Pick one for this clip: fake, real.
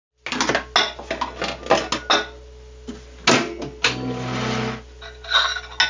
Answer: real